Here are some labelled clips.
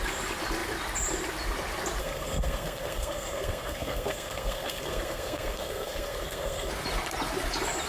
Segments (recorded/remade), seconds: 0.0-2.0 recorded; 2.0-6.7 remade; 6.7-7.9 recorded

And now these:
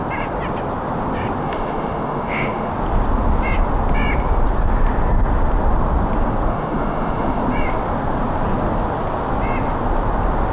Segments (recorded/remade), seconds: 0.0-1.4 recorded; 1.4-2.7 remade; 2.7-6.5 recorded; 6.5-7.4 remade; 7.4-10.5 recorded